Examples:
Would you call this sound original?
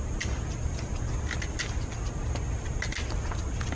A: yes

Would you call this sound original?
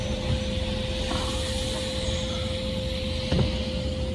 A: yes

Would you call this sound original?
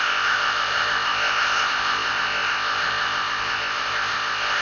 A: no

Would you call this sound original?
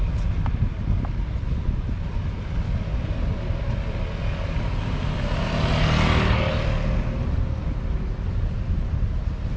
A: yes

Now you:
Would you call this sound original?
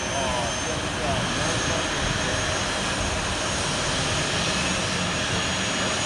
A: yes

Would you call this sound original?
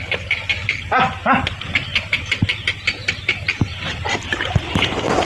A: yes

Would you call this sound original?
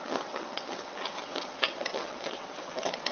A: no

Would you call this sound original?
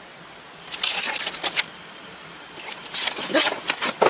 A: yes